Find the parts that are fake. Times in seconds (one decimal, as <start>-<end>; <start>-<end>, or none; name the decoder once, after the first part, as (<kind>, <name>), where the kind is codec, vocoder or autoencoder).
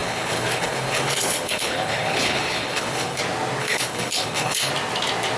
0.0-3.2 (codec, HILCodec); 3.6-4.7